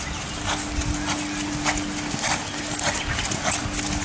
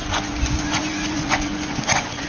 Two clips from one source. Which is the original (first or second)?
first